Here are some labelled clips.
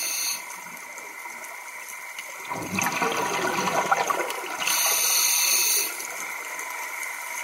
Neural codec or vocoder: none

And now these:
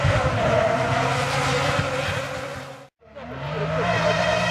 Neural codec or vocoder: none